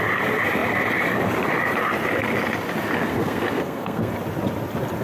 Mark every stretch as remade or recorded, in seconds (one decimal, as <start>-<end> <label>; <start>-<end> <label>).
0.0-3.1 recorded; 3.1-4.1 remade; 4.1-5.0 recorded